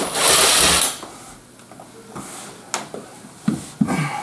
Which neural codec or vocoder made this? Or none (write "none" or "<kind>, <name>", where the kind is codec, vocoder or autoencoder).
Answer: none